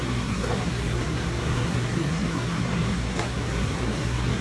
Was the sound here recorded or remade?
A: remade